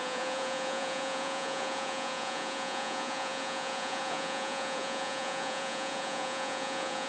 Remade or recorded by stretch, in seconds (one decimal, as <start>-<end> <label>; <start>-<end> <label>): 0.0-7.1 remade